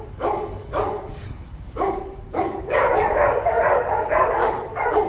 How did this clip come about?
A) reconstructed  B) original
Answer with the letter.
A